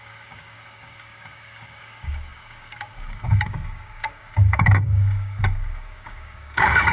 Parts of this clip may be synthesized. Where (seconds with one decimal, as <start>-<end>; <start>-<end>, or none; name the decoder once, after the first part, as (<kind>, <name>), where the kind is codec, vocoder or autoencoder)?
0.0-6.9 (codec, DAC)